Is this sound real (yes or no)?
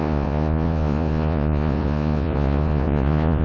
no